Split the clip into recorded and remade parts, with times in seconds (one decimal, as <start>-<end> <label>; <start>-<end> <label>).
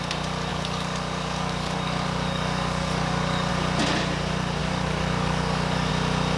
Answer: 0.0-0.5 recorded; 0.5-3.5 remade; 3.5-4.6 recorded; 4.6-5.9 remade; 5.9-6.4 recorded